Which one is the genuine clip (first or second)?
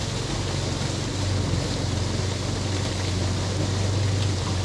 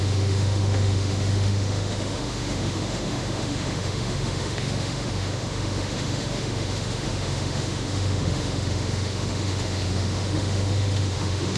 first